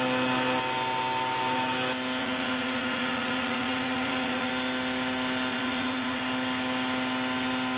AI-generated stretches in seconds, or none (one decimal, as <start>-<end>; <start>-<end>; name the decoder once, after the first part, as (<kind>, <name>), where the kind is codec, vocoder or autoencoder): 2.2-4.5 (vocoder, Vocos); 5.5-6.2